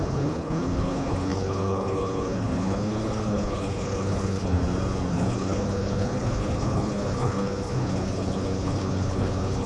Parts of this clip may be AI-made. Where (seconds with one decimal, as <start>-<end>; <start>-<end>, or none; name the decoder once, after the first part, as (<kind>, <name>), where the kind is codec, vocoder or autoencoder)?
0.0-4.6 (codec, HILCodec); 5.1-9.7